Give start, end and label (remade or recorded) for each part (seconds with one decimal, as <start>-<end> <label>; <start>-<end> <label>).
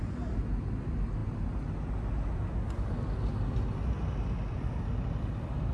0.0-5.7 recorded